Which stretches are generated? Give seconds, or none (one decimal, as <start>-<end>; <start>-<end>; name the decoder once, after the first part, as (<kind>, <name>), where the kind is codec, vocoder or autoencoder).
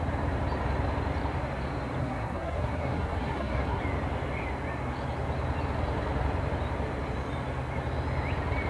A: 2.0-3.8 (codec, SNAC)